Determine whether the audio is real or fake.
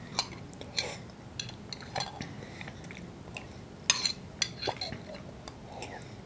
real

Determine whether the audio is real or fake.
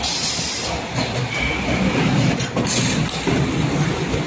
real